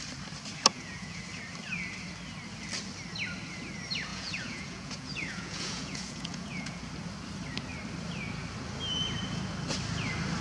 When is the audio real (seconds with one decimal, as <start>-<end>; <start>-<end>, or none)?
0.0-0.7; 1.2-4.1; 6.8-10.4